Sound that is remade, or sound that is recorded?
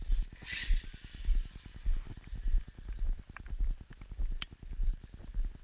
recorded